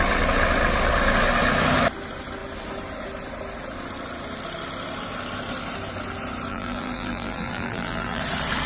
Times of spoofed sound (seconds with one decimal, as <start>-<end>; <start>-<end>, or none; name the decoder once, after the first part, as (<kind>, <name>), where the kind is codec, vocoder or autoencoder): 6.5-8.2 (vocoder, BigVGAN v2)

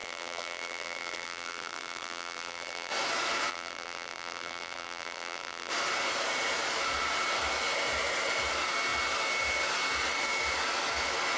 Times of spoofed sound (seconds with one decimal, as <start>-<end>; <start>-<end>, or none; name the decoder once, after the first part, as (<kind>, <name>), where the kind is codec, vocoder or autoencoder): 0.0-2.9 (vocoder, BigVGAN v2); 3.5-5.7

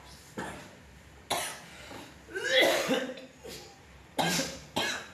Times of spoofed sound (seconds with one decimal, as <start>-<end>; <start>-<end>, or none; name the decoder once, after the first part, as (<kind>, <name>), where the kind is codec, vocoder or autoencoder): none

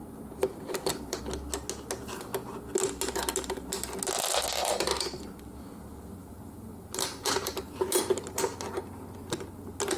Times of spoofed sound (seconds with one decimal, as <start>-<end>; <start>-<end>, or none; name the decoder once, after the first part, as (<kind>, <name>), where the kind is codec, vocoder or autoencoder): 0.0-1.2 (vocoder, BigVGAN v2); 6.2-8.0

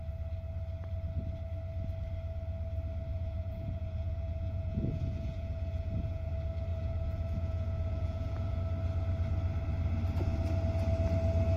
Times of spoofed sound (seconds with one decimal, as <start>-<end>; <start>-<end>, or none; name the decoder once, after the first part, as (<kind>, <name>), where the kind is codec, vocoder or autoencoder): 3.1-6.3 (vocoder, Vocos); 6.7-8.6